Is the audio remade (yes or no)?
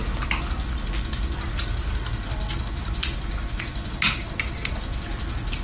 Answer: no